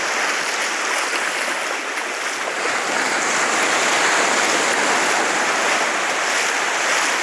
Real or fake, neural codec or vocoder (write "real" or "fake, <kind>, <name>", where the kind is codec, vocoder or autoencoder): real